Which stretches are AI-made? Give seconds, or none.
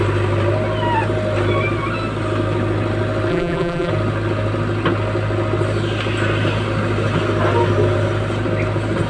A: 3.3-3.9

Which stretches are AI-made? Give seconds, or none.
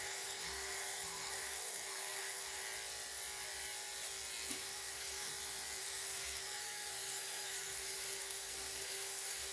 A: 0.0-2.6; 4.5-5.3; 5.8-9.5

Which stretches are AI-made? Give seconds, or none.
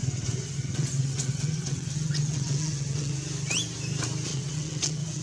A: 0.0-3.1; 4.3-5.2